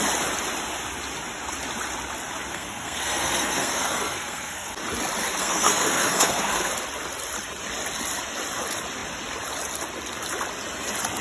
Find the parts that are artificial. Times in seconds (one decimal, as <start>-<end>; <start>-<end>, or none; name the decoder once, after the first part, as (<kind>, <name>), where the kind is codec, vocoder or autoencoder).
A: 2.5-4.7 (codec, SNAC); 5.2-6.7